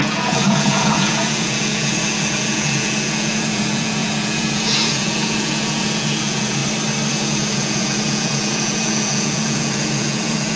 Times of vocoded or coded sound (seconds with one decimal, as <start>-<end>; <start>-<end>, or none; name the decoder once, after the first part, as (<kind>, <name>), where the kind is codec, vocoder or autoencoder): 0.0-6.6 (vocoder, Vocos); 7.1-10.6